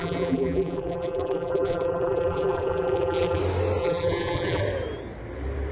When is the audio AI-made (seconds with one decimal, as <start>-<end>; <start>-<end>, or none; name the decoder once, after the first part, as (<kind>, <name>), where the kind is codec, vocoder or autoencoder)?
0.0-3.4 (vocoder, BigVGAN v2); 3.8-4.6